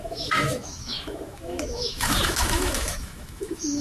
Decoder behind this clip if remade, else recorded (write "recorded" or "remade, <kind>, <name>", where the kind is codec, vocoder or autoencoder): remade, autoencoder, DAC-VAE